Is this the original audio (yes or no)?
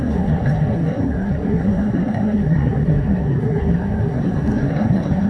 no